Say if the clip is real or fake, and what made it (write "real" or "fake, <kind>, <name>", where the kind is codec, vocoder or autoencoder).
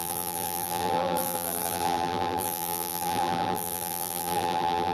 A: fake, vocoder, BigVGAN v2